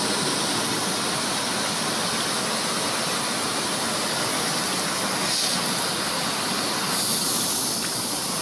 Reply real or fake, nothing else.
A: real